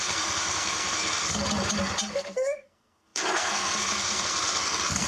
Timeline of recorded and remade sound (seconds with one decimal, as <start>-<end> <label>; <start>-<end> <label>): 0.0-1.4 remade; 1.4-2.1 recorded; 2.1-5.1 remade